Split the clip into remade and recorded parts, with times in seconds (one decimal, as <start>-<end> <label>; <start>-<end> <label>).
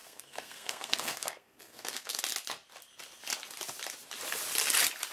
0.0-2.2 remade; 2.2-5.1 recorded